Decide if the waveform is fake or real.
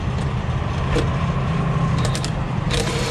real